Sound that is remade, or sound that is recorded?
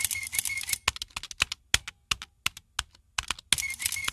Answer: recorded